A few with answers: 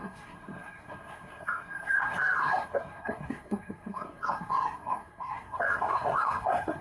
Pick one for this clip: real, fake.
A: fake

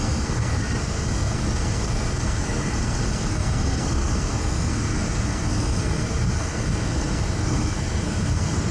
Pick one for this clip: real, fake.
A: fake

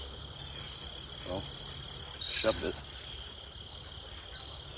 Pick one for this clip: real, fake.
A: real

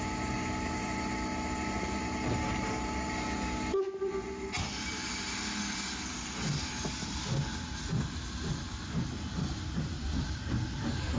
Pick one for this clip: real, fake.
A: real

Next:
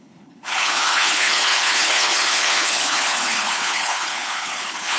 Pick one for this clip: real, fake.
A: fake